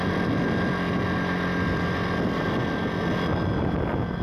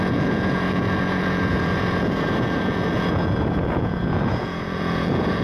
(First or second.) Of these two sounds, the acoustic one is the first